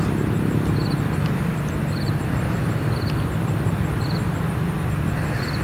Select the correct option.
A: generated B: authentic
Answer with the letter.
A